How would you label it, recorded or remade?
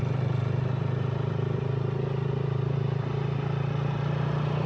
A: recorded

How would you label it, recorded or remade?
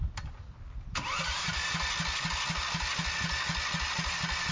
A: recorded